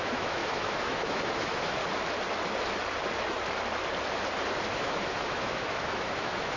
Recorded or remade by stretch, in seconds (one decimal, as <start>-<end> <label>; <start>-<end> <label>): 0.0-1.8 remade; 1.8-4.6 recorded; 4.6-6.6 remade